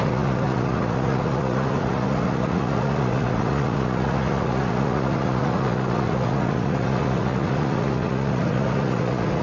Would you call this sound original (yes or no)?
no